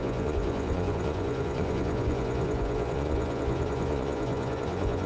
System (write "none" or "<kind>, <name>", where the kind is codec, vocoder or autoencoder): vocoder, Vocos